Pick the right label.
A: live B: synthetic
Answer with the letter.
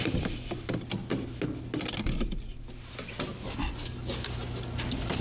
A